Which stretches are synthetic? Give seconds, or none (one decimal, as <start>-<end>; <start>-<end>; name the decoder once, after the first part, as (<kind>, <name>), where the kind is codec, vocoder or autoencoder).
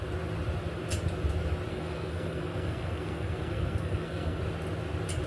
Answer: 1.7-4.4 (codec, SNAC)